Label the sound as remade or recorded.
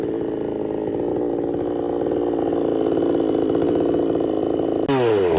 recorded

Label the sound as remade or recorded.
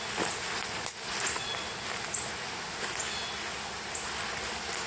recorded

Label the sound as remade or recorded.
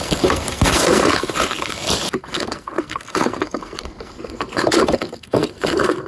remade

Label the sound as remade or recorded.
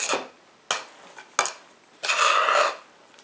recorded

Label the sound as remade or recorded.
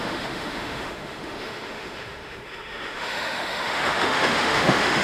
remade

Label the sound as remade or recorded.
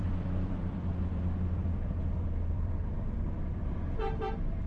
remade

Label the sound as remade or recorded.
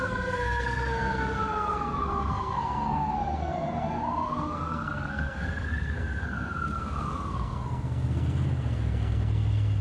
remade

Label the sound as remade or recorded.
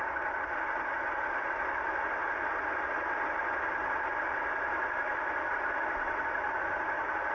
recorded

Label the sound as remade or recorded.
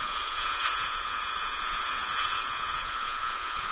remade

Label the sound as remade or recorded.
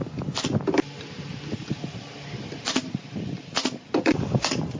recorded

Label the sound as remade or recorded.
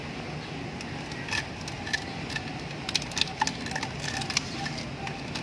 recorded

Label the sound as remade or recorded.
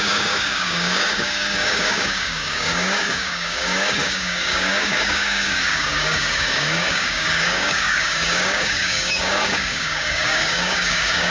remade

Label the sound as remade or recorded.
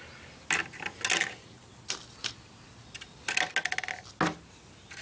recorded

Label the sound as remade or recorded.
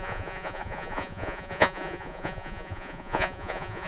remade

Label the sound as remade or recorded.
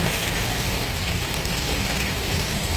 remade